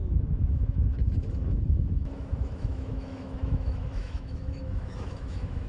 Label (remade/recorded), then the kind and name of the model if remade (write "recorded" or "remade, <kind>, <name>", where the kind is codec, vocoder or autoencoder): remade, autoencoder, DAC-VAE